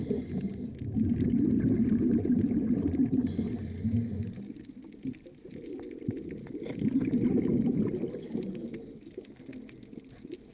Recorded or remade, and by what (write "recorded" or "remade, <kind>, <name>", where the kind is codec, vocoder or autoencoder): recorded